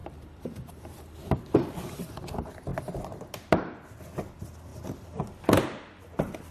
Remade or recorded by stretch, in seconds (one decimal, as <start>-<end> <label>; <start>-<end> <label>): 0.0-1.6 remade; 1.6-4.7 recorded; 4.7-6.0 remade; 6.0-6.5 recorded